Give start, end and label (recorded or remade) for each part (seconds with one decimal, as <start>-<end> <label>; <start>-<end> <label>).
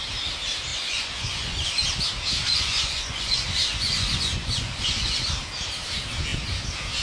0.0-0.7 recorded; 0.7-1.7 remade; 1.7-2.4 recorded; 2.4-5.2 remade; 5.2-7.0 recorded